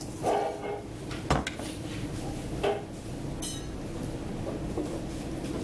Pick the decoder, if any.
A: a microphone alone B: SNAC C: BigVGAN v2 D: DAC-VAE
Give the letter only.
A